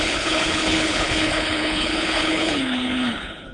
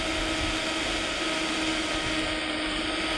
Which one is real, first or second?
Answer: second